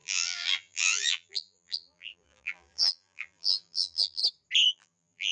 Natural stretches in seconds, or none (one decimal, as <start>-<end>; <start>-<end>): 4.2-4.7